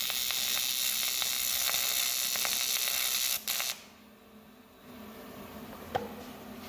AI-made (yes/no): no